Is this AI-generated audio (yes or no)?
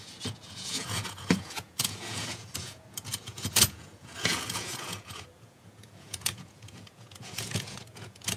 yes